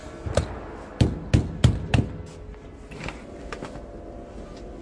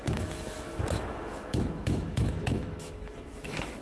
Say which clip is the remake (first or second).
second